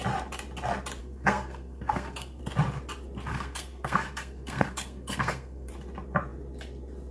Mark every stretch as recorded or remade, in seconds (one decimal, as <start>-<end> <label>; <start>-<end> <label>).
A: 0.0-1.0 recorded; 1.0-2.4 remade; 2.4-3.3 recorded; 3.3-5.7 remade; 5.7-7.1 recorded